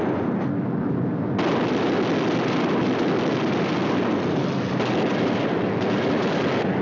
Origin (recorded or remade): recorded